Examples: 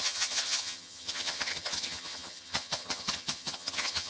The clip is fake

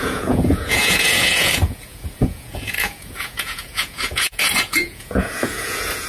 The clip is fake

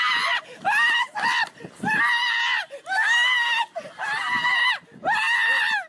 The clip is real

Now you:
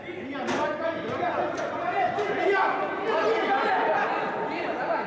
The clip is real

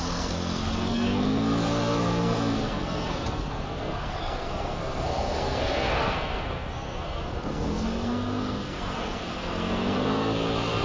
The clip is fake